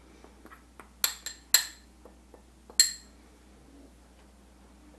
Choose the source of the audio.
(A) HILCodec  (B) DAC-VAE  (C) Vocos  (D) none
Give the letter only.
D